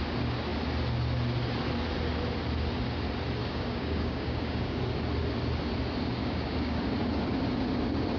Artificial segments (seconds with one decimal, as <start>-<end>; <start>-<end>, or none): 3.4-4.8; 6.2-6.8